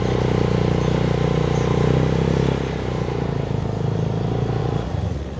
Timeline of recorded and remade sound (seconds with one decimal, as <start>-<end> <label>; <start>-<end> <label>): 0.0-4.6 recorded; 4.6-5.4 remade